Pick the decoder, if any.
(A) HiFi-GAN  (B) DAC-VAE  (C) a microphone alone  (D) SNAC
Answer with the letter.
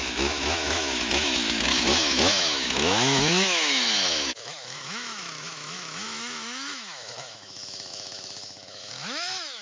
B